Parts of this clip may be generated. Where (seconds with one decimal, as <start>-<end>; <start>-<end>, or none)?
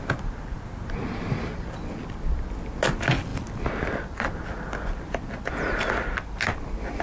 none